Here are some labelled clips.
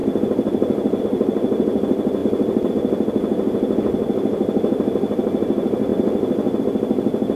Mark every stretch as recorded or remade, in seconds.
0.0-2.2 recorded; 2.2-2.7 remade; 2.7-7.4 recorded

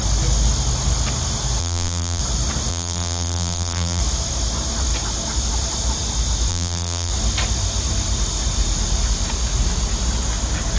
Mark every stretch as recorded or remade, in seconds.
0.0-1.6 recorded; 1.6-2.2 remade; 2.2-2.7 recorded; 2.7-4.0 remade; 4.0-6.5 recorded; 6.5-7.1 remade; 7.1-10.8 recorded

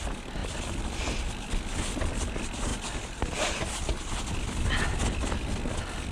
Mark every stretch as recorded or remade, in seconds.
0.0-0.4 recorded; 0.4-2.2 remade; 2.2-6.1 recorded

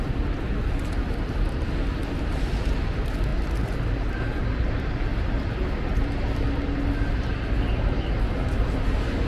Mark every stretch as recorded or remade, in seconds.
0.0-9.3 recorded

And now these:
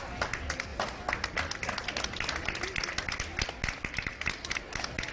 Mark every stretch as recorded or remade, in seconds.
0.0-5.1 recorded

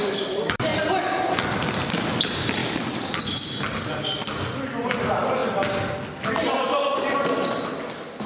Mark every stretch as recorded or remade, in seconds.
0.0-0.7 remade; 0.7-1.3 recorded; 1.3-2.6 remade; 2.6-4.5 recorded; 4.5-5.4 remade; 5.4-7.1 recorded; 7.1-8.3 remade